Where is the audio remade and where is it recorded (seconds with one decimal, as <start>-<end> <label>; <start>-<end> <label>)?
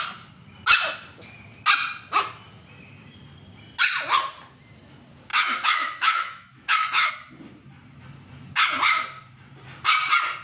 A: 0.0-5.3 recorded; 5.3-7.1 remade; 7.1-10.4 recorded